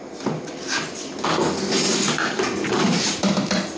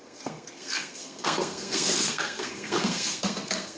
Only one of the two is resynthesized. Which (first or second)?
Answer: second